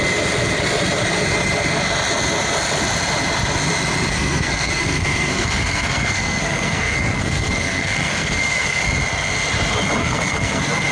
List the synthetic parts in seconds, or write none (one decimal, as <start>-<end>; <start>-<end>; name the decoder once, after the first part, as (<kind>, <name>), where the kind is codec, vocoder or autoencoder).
4.1-8.8 (codec, SNAC); 10.0-10.9